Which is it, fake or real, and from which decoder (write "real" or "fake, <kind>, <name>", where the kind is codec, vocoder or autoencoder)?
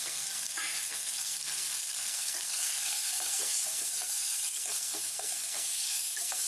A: fake, codec, SNAC